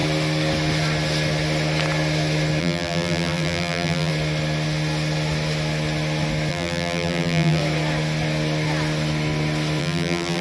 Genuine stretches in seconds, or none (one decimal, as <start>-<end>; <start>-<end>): 0.0-2.6; 4.1-6.5; 7.6-9.8